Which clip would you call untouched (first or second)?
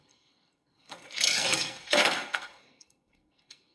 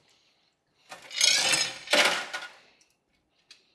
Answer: second